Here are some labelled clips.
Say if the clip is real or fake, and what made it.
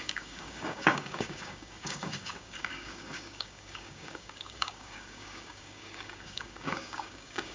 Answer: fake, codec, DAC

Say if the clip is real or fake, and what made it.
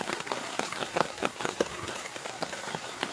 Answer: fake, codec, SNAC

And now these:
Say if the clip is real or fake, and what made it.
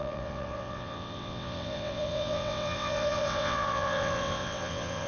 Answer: fake, vocoder, WaveNeXt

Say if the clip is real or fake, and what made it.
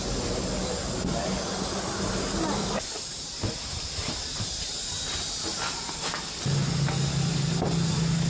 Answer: real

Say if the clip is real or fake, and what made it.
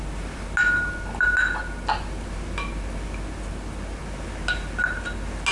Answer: real